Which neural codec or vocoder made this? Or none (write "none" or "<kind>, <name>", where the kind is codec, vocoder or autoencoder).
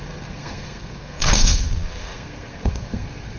codec, SNAC